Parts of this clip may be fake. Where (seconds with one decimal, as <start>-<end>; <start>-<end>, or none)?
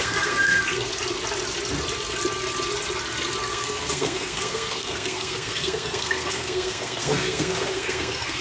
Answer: 0.0-0.9; 3.5-8.4